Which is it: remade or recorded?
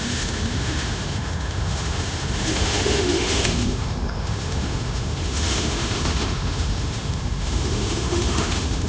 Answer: remade